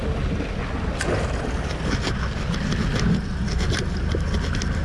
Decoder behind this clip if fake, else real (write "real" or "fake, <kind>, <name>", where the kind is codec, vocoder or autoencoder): real